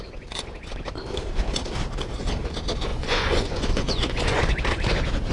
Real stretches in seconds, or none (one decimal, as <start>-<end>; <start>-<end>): 0.0-2.9; 4.4-5.3